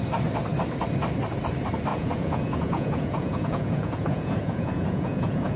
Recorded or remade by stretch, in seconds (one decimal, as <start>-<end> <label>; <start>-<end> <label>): 0.0-1.9 recorded; 1.9-5.6 remade